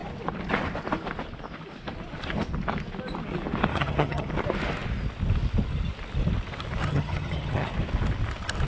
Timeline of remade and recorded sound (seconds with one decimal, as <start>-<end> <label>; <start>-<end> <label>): 0.0-3.7 recorded; 3.7-4.3 remade; 4.3-6.8 recorded; 6.8-7.7 remade; 7.7-8.7 recorded